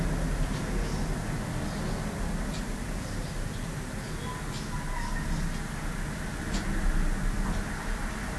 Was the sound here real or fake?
real